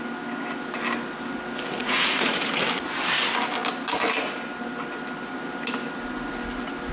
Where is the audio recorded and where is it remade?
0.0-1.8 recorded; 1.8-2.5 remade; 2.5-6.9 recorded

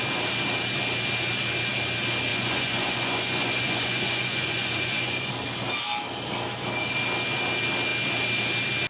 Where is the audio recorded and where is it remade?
0.0-2.3 recorded; 2.3-5.3 remade; 5.3-8.9 recorded

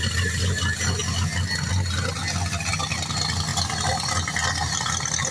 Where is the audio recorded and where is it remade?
0.0-5.3 recorded

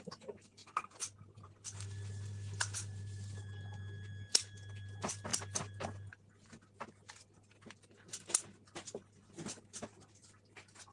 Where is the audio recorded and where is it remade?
0.0-10.9 recorded

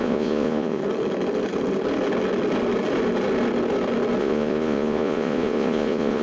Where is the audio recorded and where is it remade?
0.0-0.8 remade; 0.8-4.2 recorded; 4.2-6.2 remade

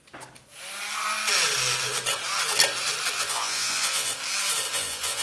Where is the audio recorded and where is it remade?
0.0-3.1 recorded; 3.1-4.1 remade; 4.1-4.7 recorded; 4.7-5.2 remade